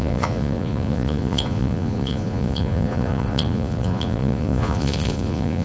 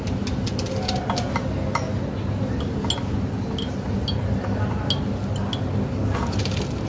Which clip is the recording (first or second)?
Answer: second